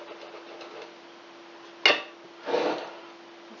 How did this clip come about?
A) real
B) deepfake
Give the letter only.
A